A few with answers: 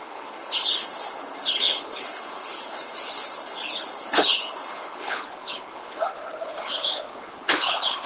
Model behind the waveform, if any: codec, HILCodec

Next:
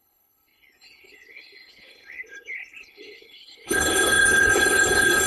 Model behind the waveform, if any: codec, HILCodec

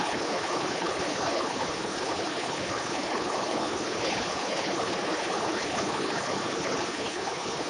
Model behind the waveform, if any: codec, HILCodec